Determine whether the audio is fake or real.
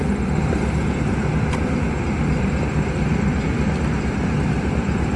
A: real